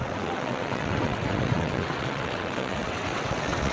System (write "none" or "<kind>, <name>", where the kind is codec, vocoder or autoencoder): vocoder, WaveNeXt